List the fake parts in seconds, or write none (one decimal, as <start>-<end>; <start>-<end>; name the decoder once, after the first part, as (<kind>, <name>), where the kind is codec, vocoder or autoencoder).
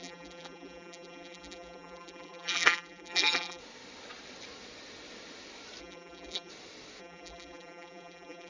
0.0-3.6 (vocoder, BigVGAN v2); 5.8-6.5; 7.0-8.5